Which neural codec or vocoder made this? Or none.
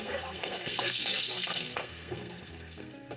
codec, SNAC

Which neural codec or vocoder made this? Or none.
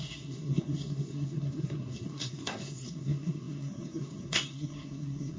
codec, SNAC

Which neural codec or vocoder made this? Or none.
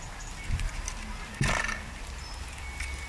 none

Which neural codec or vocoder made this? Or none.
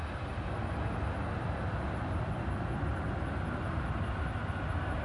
none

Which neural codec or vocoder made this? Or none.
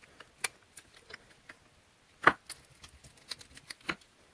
none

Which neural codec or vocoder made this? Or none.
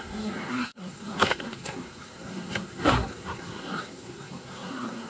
codec, SNAC